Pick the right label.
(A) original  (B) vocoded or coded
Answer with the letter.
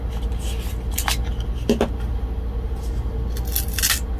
A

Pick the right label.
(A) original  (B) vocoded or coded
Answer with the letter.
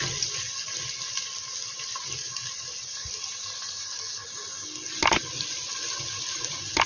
A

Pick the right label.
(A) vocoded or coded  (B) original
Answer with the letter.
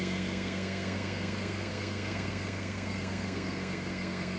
A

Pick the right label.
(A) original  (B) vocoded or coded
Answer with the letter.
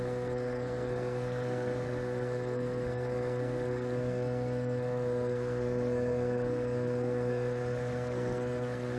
B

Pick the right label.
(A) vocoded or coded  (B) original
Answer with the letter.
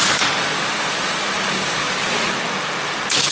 B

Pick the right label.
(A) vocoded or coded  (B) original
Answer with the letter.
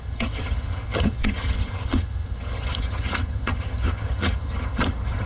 A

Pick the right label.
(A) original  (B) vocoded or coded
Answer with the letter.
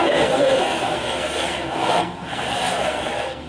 B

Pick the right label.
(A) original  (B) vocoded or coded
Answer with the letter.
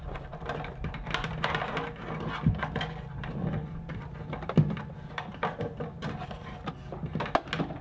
A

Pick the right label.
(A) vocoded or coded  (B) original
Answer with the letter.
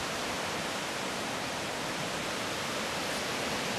A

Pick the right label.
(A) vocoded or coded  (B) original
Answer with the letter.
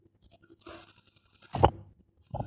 B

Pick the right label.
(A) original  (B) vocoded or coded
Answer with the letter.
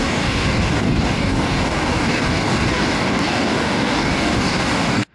B